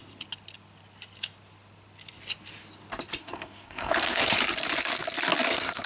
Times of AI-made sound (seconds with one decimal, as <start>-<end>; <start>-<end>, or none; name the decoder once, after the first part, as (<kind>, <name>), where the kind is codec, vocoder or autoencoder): 3.2-4.2 (codec, SNAC)